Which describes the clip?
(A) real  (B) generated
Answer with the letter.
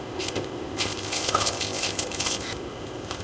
B